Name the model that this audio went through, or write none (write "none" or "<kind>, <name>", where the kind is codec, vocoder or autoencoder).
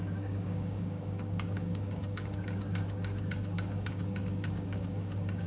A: codec, DAC